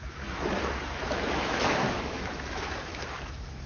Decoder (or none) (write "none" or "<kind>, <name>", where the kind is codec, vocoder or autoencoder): autoencoder, DAC-VAE